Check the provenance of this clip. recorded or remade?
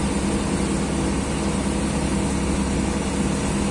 recorded